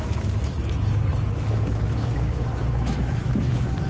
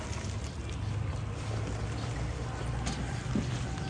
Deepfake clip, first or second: first